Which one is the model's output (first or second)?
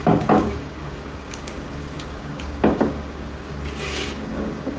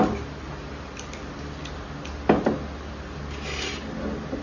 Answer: first